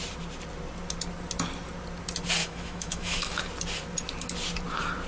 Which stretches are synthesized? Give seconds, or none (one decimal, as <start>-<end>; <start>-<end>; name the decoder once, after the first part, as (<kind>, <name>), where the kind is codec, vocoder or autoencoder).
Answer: 2.4-3.4 (autoencoder, DAC-VAE)

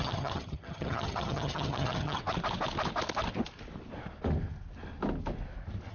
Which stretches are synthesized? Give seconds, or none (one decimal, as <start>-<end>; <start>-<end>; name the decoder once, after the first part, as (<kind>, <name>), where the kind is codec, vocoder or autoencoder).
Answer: 0.0-2.2 (vocoder, HiFi-GAN)